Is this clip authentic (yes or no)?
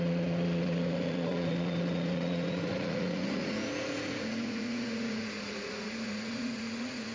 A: no